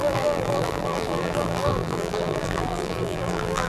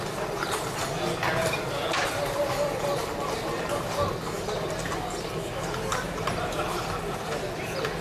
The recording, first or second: second